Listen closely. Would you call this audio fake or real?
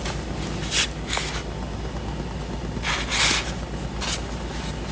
real